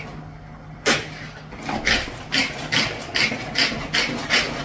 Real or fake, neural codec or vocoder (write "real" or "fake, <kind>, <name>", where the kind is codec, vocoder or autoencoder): real